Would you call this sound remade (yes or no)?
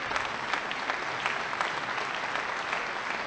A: no